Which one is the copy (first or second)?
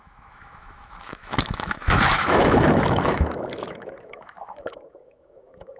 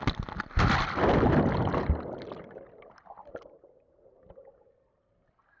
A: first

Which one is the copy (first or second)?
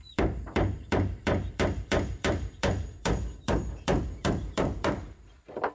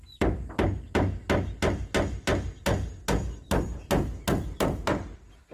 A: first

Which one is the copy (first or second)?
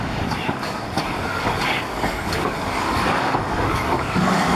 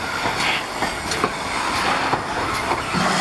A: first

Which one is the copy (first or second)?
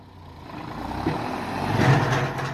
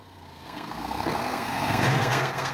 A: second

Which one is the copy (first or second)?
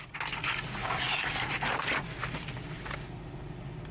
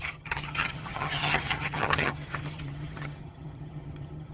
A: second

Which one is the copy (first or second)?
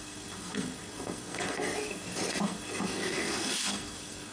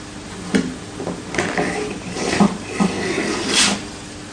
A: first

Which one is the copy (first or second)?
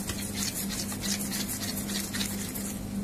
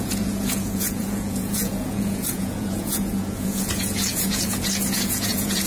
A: second